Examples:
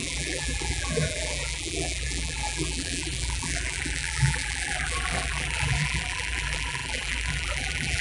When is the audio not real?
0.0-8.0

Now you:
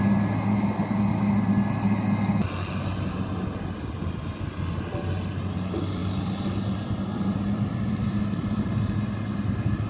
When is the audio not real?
6.0-8.6

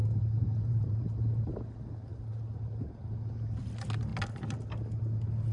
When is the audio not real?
0.0-1.4

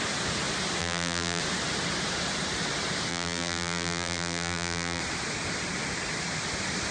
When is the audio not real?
0.8-1.4; 3.1-5.0

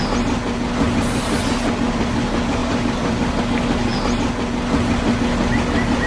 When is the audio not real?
2.6-3.4